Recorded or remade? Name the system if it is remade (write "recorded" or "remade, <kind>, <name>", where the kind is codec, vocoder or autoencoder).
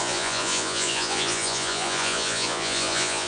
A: remade, vocoder, Vocos